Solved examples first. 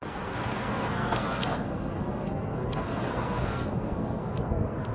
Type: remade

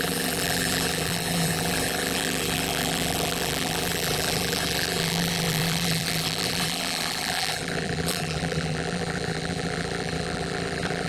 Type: remade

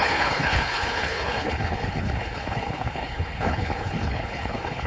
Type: remade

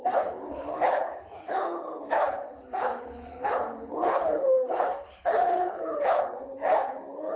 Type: remade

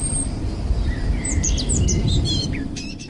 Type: remade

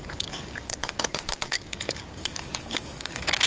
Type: remade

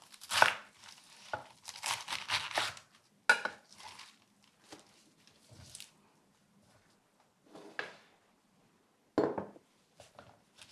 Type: recorded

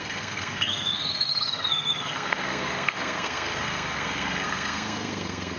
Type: remade